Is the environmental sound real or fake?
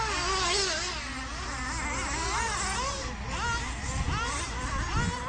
real